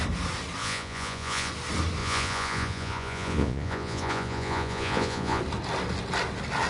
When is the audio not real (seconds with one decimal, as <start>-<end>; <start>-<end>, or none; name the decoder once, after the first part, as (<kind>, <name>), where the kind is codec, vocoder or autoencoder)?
0.6-1.5 (vocoder, Vocos); 2.0-5.4